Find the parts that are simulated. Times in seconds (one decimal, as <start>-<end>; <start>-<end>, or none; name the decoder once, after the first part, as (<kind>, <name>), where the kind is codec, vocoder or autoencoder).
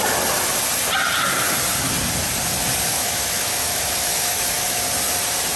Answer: 2.9-4.8 (autoencoder, DAC-VAE)